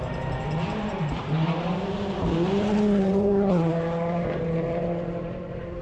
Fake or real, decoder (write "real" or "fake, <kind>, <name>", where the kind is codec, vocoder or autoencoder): fake, vocoder, BigVGAN v2